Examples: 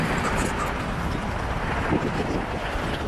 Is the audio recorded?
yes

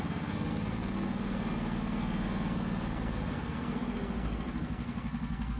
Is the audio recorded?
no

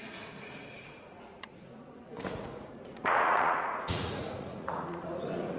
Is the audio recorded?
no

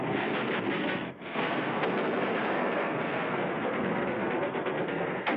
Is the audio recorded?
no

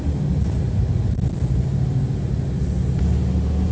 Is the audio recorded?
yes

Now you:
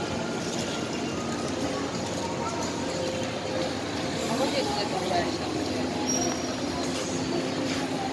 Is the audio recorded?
yes